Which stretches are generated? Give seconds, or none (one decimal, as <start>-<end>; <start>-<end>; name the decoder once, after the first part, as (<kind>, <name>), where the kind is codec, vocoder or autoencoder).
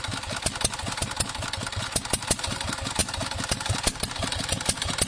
none